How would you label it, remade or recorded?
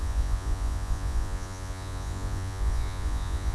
remade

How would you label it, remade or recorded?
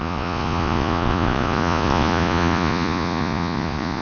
remade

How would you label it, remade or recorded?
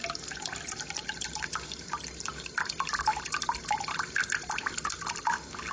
recorded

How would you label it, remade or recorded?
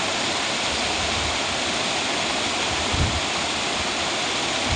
recorded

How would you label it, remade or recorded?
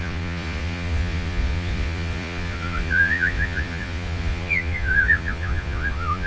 remade